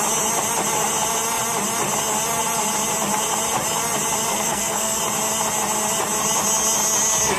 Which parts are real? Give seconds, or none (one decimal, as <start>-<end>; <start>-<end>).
0.0-4.3; 5.0-7.4